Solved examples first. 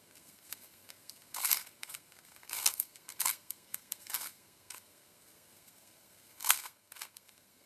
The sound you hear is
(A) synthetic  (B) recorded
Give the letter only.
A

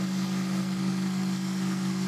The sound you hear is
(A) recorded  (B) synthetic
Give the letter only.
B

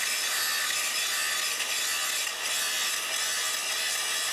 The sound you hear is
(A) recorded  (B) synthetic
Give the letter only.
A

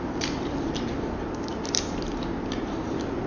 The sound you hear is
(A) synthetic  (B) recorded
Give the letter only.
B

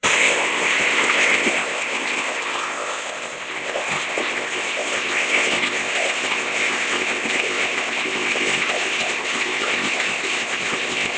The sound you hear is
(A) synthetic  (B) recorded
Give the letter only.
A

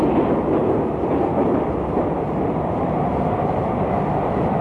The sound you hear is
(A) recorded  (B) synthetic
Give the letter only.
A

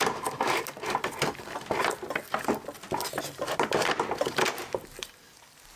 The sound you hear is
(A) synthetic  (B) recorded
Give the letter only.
B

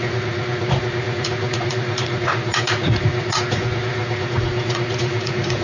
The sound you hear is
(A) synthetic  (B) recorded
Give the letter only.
A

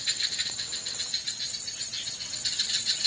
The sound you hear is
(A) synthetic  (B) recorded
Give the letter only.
A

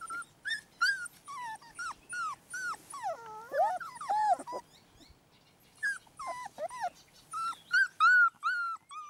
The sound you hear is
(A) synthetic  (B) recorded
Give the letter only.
B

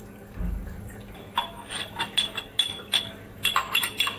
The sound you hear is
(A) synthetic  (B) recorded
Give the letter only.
A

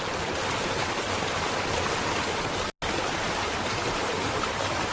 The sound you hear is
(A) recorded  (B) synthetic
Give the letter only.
A